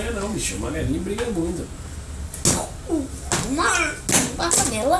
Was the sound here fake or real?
real